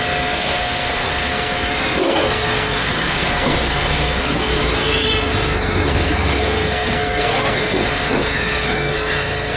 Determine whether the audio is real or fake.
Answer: fake